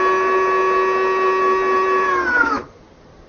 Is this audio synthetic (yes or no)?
no